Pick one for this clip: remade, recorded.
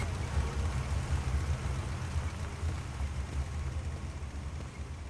recorded